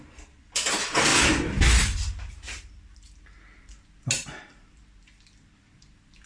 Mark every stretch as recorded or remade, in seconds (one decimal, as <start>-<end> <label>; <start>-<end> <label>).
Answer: 0.0-6.3 recorded